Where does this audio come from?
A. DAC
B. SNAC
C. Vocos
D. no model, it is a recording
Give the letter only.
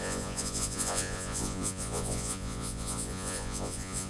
C